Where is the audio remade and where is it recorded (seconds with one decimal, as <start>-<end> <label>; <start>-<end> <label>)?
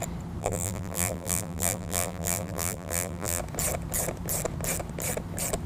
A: 0.0-0.4 recorded; 0.4-3.4 remade; 3.4-5.7 recorded